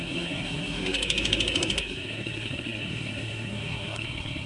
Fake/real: fake